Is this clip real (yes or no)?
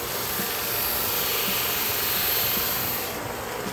no